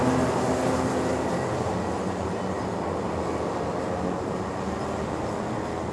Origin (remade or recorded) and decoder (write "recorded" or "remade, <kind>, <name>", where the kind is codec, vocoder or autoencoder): recorded